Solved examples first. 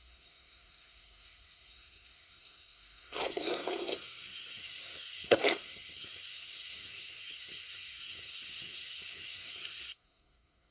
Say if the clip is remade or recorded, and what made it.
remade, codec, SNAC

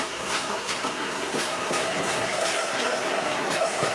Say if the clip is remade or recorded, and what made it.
remade, codec, SNAC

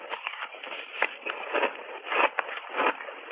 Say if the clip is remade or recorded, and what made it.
recorded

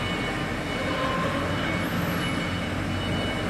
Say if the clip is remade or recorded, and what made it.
recorded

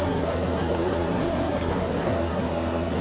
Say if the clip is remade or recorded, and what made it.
remade, codec, SNAC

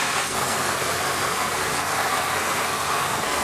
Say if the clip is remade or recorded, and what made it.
remade, codec, SNAC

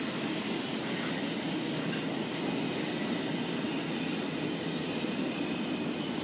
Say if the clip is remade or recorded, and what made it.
recorded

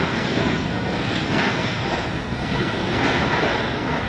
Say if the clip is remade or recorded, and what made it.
remade, codec, SNAC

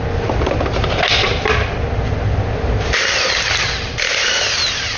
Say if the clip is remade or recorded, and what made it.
recorded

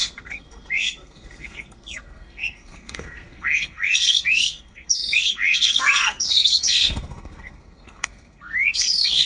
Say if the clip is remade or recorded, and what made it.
remade, codec, SNAC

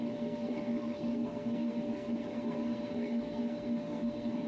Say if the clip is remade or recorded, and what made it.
remade, codec, SNAC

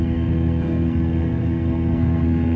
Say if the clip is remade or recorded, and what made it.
remade, codec, SNAC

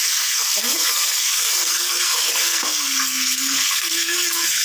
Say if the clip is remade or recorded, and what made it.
remade, codec, SNAC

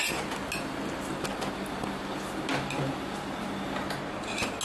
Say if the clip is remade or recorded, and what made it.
recorded